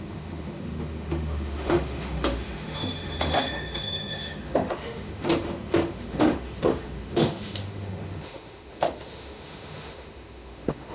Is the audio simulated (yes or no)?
yes